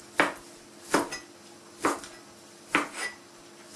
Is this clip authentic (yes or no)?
yes